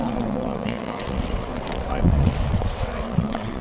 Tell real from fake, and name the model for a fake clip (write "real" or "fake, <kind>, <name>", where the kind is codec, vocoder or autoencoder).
fake, vocoder, WaveNeXt